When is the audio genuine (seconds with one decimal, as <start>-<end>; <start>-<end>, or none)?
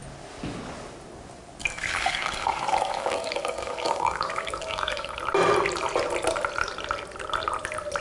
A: 0.0-1.6; 5.2-8.0